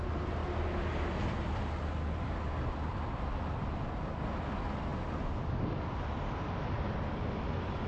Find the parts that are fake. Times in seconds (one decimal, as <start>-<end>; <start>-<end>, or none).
none